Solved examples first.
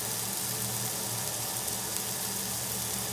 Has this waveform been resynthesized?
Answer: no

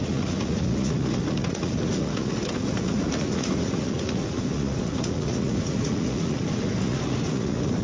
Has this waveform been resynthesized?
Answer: yes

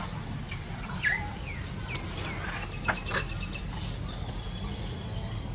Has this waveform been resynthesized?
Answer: no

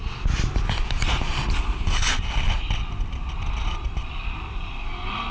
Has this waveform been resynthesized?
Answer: no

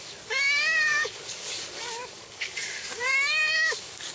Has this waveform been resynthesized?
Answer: yes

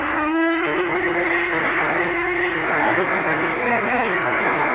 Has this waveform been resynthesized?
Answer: yes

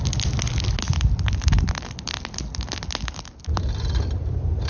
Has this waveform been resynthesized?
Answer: no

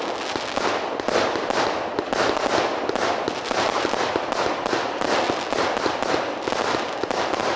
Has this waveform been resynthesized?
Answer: no